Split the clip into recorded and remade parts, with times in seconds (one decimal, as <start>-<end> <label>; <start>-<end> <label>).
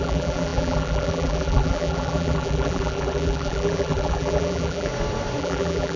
0.0-4.9 remade; 4.9-5.4 recorded; 5.4-6.0 remade